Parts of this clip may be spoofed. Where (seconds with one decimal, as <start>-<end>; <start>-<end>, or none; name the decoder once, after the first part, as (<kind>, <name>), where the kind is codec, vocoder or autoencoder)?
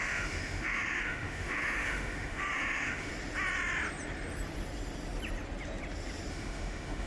0.0-3.1 (autoencoder, DAC-VAE); 6.3-7.1